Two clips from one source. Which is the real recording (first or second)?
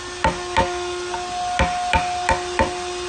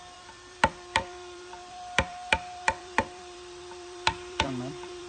first